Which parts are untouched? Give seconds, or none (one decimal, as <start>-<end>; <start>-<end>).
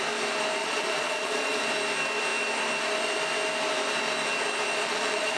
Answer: 0.0-0.6; 1.6-4.8